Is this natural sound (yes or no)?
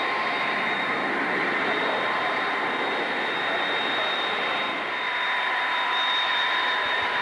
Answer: no